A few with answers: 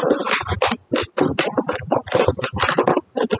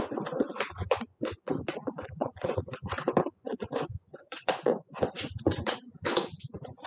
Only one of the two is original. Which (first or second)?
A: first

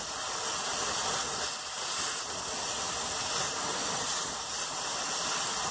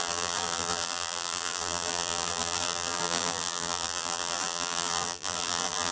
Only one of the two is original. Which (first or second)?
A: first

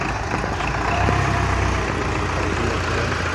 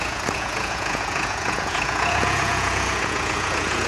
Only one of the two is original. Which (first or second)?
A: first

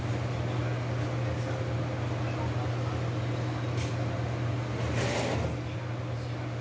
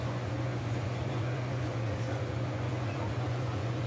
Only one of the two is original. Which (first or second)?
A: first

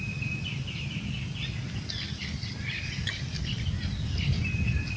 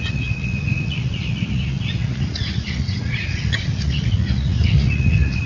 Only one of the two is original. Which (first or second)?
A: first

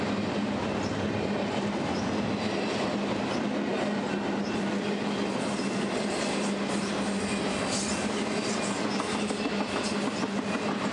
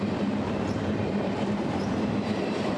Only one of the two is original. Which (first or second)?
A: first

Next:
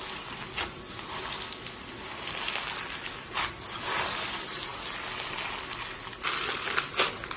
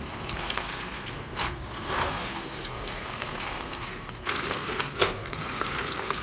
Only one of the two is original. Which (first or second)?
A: first